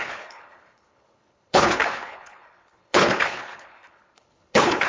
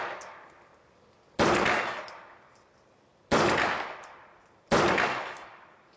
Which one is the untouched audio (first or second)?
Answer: second